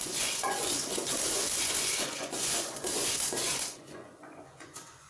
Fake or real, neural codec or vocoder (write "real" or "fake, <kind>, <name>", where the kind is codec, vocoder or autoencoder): fake, vocoder, Vocos